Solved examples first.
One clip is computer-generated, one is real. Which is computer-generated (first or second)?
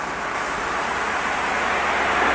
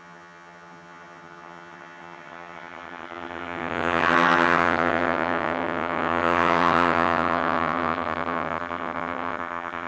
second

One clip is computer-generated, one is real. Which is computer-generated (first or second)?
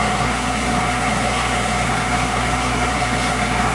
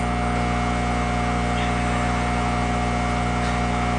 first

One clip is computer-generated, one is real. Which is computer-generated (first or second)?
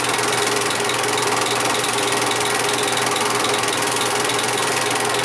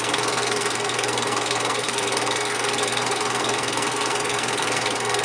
second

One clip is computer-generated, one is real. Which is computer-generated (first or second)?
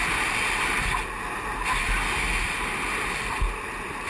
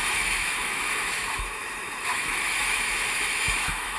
second